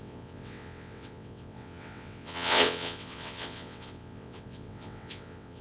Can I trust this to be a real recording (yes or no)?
no